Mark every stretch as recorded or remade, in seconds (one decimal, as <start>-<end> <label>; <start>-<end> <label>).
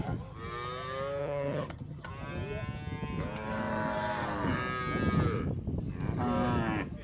0.0-1.2 recorded; 1.2-2.1 remade; 2.1-7.0 recorded